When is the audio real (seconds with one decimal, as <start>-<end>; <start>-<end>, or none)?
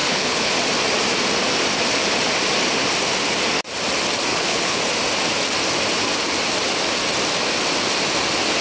0.5-4.3; 4.8-8.6